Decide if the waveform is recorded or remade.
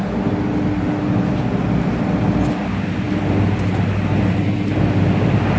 recorded